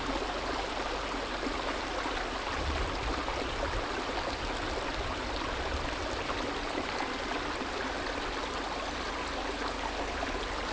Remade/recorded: recorded